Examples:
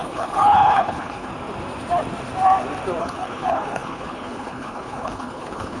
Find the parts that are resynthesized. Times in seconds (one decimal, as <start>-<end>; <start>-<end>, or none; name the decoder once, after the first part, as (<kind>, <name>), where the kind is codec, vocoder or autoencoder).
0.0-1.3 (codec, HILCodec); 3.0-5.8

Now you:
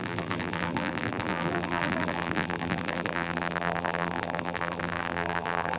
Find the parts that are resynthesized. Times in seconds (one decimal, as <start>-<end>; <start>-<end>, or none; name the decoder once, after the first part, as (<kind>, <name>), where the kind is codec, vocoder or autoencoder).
0.0-5.8 (vocoder, BigVGAN v2)

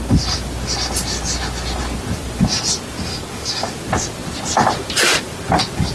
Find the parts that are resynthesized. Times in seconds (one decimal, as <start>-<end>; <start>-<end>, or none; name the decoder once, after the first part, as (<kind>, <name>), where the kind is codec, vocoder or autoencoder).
3.1-3.7 (codec, DAC)

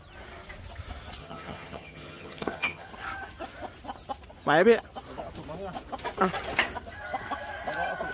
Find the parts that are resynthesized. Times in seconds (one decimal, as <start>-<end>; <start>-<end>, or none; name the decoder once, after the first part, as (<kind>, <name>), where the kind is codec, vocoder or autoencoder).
1.2-2.9 (vocoder, HiFi-GAN)

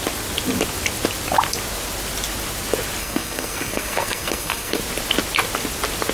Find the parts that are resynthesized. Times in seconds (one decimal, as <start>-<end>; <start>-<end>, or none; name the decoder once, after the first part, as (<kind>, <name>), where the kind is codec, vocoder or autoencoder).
3.0-4.8 (codec, SNAC)